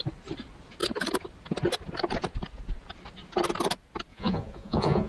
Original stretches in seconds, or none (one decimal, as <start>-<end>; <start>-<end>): 0.0-4.1